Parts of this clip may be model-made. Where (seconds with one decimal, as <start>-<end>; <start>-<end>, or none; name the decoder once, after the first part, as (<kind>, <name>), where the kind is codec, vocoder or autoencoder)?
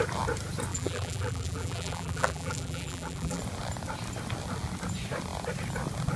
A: 0.7-3.4 (vocoder, BigVGAN v2)